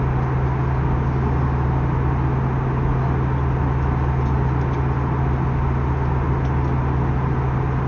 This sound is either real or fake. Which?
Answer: real